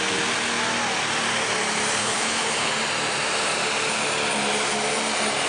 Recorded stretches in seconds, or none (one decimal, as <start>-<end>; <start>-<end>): 0.0-2.0; 2.7-5.5